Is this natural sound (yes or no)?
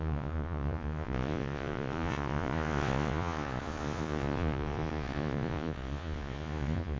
no